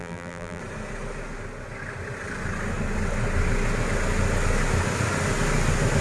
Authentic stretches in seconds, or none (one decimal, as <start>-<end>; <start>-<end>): 0.6-6.0